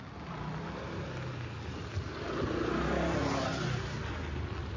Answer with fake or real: real